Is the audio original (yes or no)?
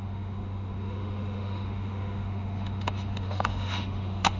no